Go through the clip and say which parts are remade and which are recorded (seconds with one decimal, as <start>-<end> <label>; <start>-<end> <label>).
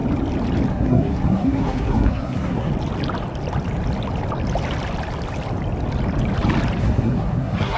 0.0-0.7 recorded; 0.7-2.7 remade; 2.7-6.8 recorded; 6.8-7.8 remade